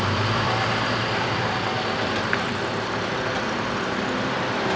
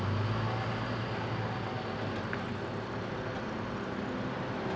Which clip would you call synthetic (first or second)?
first